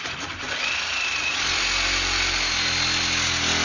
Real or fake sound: real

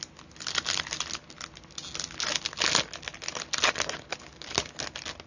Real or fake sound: real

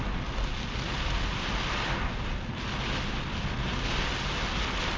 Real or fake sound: real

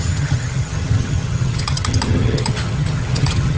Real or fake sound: fake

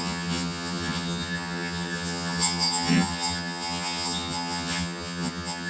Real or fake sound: fake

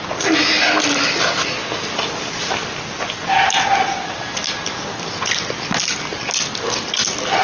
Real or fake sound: real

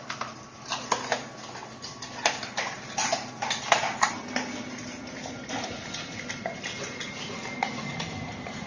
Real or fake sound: real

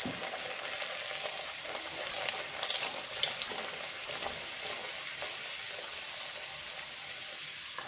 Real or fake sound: real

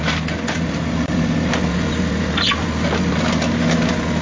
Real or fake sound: real